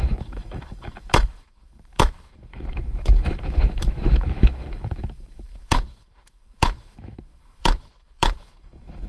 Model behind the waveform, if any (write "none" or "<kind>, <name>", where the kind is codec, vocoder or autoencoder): autoencoder, DAC-VAE